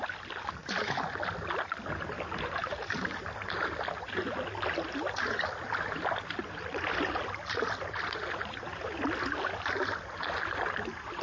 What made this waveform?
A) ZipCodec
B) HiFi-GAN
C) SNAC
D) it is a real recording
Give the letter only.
D